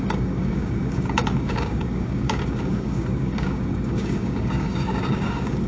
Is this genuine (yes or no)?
no